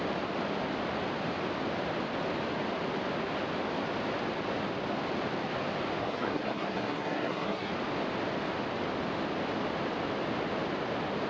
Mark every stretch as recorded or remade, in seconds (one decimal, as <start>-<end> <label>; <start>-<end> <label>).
0.0-6.0 recorded; 6.0-7.7 remade; 7.7-11.3 recorded